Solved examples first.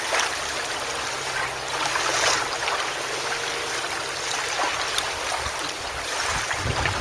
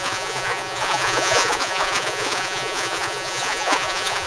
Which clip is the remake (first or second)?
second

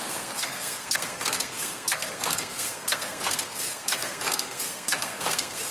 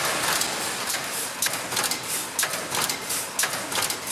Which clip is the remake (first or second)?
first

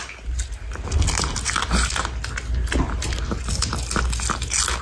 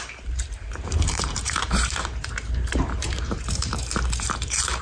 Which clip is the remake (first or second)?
second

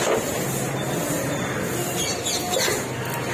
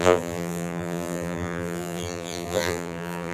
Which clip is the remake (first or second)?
second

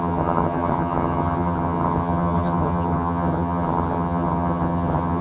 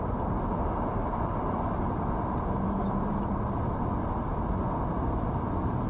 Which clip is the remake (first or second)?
first